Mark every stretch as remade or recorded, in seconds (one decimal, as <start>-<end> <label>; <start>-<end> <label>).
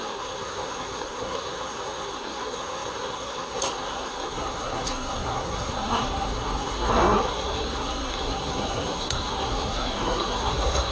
0.0-10.9 remade